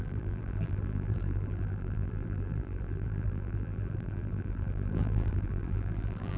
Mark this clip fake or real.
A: fake